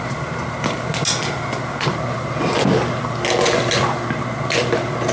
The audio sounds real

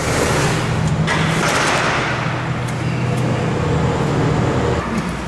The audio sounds real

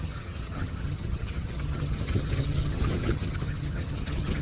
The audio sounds fake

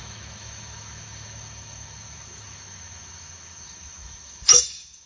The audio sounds fake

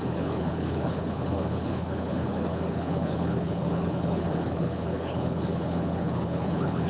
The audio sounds fake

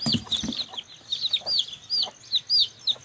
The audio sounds real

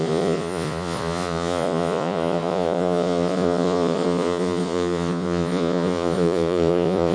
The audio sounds fake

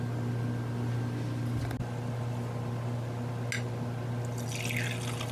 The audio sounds real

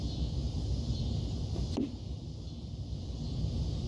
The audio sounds fake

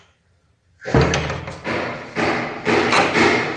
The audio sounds real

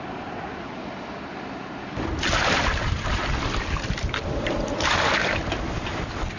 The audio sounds fake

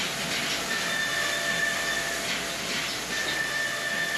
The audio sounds real